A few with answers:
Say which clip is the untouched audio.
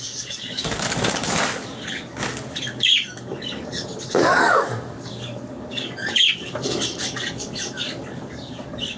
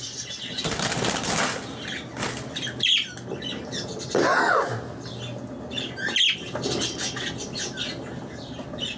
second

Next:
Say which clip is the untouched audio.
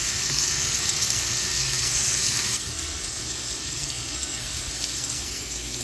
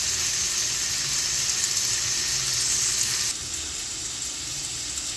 second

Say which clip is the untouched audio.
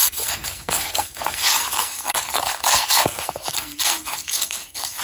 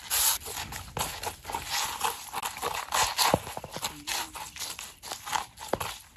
second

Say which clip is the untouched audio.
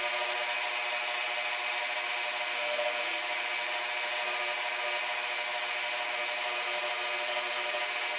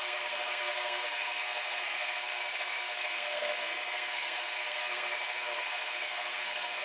first